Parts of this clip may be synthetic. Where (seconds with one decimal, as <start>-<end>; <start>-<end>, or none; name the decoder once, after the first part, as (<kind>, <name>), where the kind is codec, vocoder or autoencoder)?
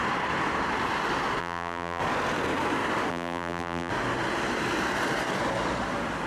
1.4-2.0 (vocoder, BigVGAN v2); 3.1-3.9